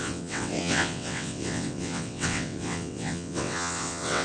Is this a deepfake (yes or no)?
yes